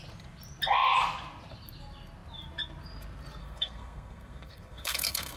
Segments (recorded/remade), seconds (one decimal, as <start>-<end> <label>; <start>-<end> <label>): 0.0-3.4 recorded; 3.4-5.4 remade